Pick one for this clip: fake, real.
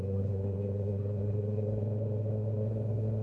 fake